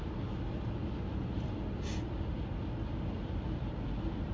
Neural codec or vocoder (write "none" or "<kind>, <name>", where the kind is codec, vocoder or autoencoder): none